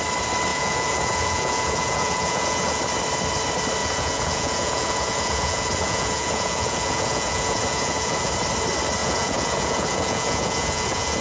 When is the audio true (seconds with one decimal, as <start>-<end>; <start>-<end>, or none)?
0.0-0.5; 2.8-3.8; 8.3-9.0